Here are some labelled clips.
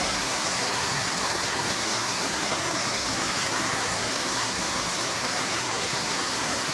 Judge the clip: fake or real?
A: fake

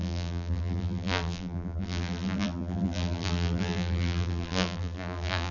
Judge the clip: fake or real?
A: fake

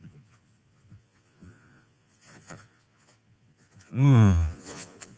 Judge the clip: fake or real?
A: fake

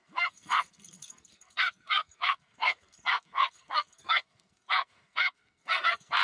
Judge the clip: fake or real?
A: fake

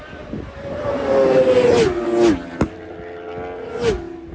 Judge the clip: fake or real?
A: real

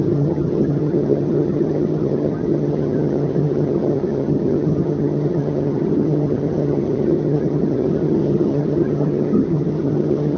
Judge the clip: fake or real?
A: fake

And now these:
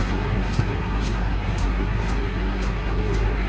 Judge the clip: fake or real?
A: fake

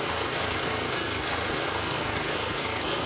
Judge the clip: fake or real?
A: fake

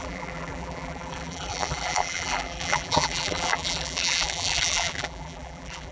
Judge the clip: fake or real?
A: fake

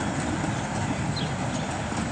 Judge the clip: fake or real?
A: real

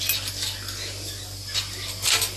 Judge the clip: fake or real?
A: real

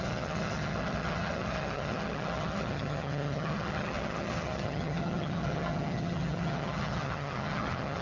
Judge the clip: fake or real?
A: fake